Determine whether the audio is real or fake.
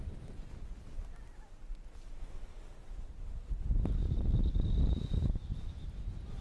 real